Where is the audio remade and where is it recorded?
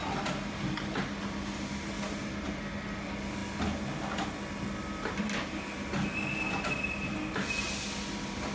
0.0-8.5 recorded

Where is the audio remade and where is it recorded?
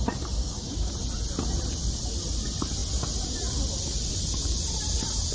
0.0-0.4 recorded; 0.4-0.9 remade; 0.9-5.3 recorded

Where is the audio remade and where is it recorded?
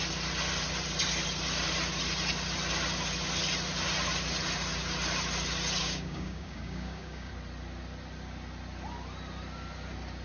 0.0-5.8 recorded; 5.8-7.3 remade; 7.3-10.2 recorded